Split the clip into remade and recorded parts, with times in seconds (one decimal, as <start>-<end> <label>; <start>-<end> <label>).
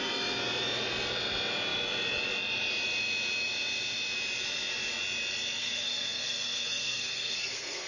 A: 0.0-5.6 recorded; 5.6-7.9 remade